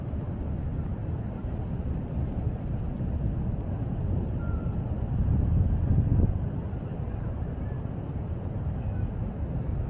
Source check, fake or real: real